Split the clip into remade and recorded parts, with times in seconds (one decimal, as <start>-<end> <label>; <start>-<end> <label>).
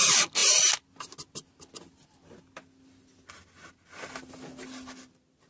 0.0-5.5 recorded